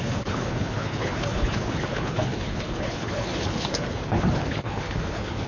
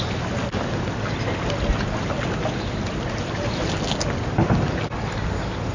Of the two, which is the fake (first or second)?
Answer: first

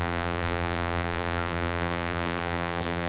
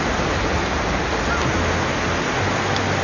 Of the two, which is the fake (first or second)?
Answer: first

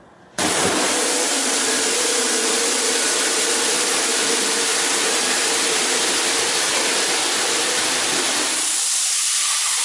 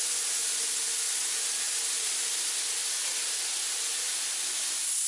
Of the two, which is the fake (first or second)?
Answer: first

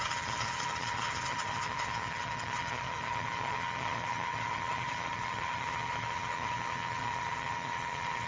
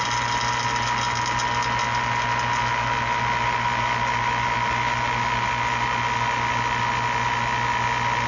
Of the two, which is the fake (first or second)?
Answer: first